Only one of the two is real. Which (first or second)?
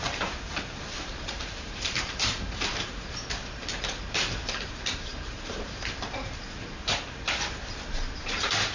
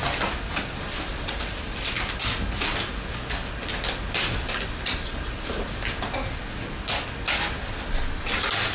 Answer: second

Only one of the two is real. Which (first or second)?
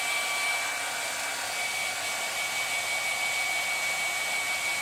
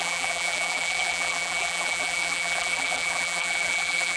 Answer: first